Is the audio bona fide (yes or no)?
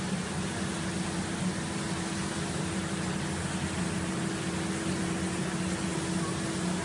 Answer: yes